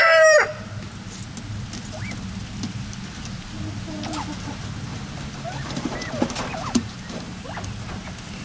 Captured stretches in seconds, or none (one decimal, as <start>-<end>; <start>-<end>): 0.5-4.9; 7.5-8.4